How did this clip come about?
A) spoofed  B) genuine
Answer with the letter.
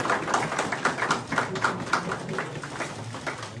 B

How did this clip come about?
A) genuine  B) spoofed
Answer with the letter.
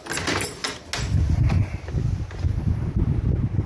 A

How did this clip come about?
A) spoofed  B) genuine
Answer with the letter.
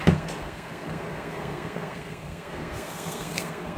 A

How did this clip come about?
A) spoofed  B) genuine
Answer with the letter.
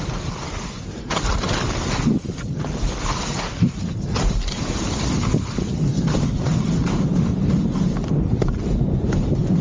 B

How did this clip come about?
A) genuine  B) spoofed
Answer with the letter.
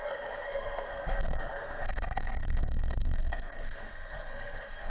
B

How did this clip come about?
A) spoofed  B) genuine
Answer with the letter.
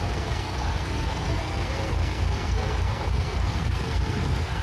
A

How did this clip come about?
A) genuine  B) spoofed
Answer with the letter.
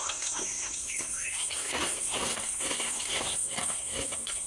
B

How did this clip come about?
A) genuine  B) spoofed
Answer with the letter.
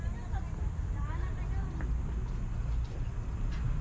A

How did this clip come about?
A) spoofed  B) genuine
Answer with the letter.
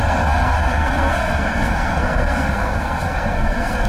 A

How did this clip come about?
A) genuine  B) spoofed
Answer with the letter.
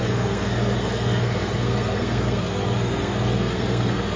B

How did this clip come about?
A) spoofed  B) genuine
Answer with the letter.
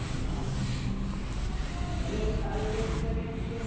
B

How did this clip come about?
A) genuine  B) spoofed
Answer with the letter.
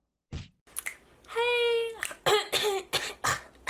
A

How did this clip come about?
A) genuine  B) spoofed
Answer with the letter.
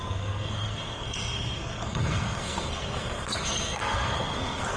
B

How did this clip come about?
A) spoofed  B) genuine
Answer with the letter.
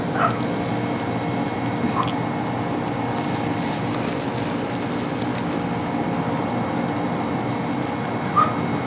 B